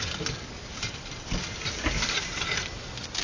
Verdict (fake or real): real